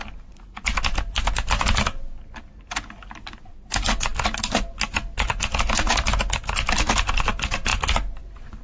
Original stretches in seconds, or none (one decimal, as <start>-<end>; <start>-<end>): 0.0-8.6